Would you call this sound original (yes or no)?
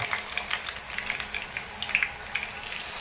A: yes